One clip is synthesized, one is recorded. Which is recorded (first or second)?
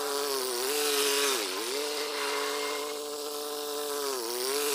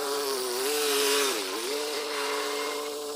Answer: first